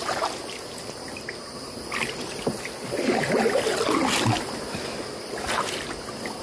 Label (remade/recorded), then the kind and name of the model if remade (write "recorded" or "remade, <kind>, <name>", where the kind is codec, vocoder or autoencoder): recorded